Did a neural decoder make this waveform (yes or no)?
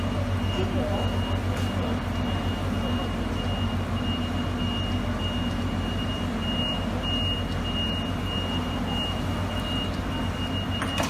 no